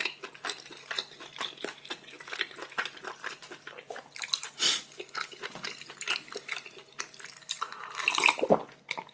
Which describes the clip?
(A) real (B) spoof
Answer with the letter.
A